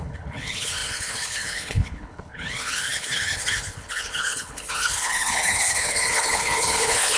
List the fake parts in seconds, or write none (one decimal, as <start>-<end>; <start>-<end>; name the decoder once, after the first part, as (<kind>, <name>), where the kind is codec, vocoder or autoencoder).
0.0-7.2 (codec, HILCodec)